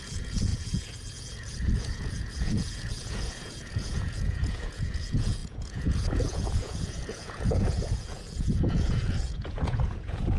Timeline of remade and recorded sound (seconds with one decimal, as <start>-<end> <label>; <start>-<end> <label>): 0.0-10.4 remade